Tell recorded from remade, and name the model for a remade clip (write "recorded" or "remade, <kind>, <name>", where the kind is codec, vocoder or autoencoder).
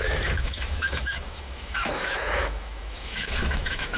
remade, autoencoder, DAC-VAE